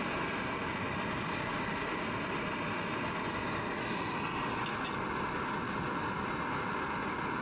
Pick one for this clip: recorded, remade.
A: recorded